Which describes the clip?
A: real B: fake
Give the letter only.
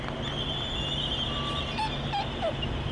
A